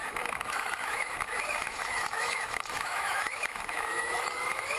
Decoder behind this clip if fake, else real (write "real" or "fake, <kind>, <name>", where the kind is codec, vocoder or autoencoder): fake, autoencoder, DAC-VAE